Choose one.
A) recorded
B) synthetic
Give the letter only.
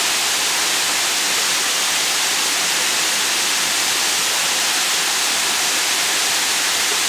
A